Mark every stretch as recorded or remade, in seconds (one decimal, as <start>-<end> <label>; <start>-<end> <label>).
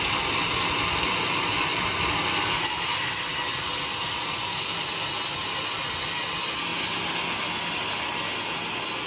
0.0-9.1 recorded